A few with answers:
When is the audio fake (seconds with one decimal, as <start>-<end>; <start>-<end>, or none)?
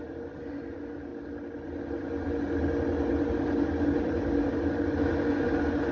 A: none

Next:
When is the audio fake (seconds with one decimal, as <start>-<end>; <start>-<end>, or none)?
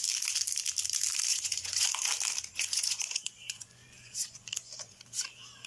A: 1.3-1.9; 2.5-5.0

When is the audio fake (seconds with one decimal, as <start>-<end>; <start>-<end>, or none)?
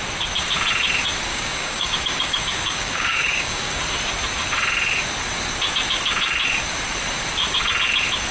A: 1.3-3.8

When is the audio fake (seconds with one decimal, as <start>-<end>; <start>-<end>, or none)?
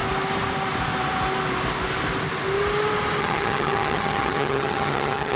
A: 3.2-5.4